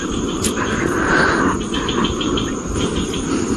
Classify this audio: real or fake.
fake